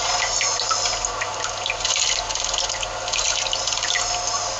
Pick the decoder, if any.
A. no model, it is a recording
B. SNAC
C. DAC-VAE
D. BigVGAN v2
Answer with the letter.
A